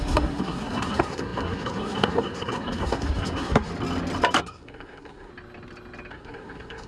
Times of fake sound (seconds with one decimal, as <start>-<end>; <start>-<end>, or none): 0.0-3.7; 4.4-5.3; 6.1-6.9

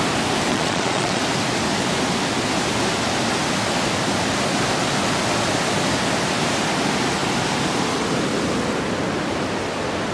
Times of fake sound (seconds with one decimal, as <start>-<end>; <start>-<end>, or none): 0.5-1.2

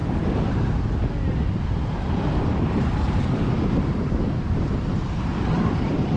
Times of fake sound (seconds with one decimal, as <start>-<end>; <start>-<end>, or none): 2.3-4.7; 5.3-6.2